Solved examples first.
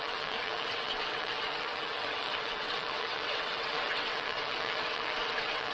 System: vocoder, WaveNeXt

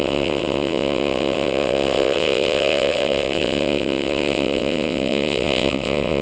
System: vocoder, WaveNeXt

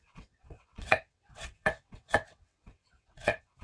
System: vocoder, WaveNeXt